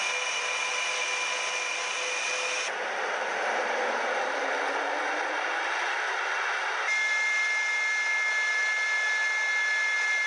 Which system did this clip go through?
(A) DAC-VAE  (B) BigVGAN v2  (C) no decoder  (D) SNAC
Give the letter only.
C